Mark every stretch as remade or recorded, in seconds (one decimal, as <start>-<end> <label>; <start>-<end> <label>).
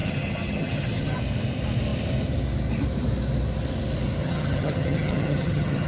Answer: 0.0-1.2 remade; 1.2-4.2 recorded; 4.2-5.9 remade